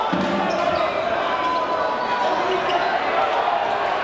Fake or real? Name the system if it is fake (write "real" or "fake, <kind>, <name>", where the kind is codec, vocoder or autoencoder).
real